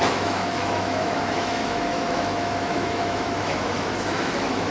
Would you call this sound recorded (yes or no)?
no